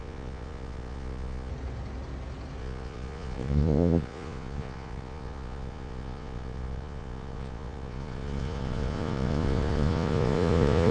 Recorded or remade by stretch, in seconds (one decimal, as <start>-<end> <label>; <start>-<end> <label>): 0.0-1.5 remade; 1.5-2.6 recorded; 2.6-10.9 remade